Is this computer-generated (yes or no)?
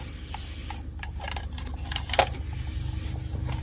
no